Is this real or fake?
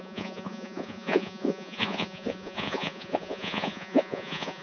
fake